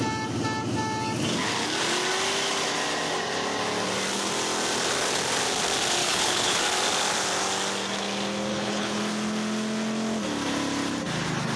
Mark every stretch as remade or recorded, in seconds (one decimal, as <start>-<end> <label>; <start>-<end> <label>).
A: 0.0-6.0 recorded; 6.0-6.6 remade; 6.6-8.5 recorded; 8.5-9.0 remade; 9.0-11.6 recorded